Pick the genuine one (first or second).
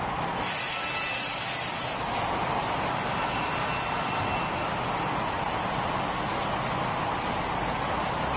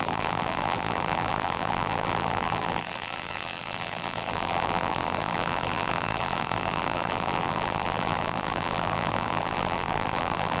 first